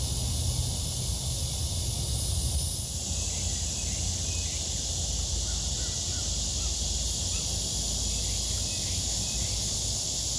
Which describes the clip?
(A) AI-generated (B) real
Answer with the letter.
B